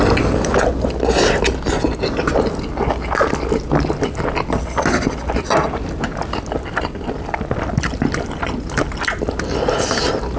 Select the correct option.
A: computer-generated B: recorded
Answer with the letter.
B